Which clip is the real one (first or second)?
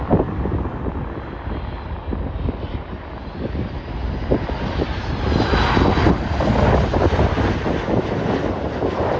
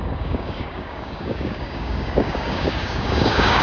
first